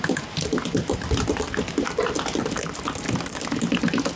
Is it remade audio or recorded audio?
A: recorded